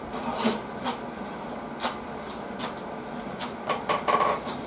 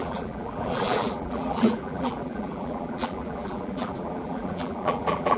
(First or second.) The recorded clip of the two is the first